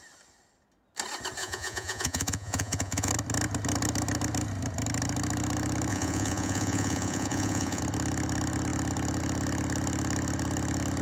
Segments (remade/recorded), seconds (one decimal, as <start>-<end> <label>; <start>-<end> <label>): 0.0-1.4 recorded; 1.4-3.1 remade; 3.1-5.9 recorded; 5.9-7.8 remade; 7.8-11.0 recorded